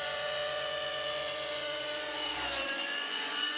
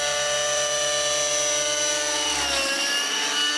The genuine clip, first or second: second